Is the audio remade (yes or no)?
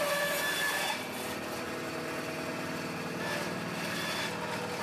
no